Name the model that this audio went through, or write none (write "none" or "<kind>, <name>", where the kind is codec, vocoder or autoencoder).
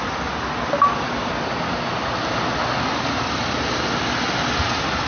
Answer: none